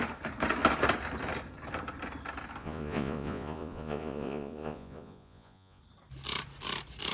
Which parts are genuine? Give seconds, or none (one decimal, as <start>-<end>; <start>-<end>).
0.0-2.6; 5.8-7.1